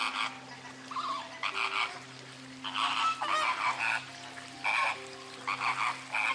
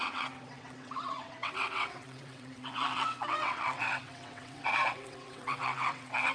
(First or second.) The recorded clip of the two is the first